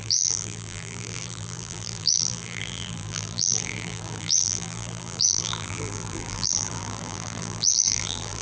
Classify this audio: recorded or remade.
remade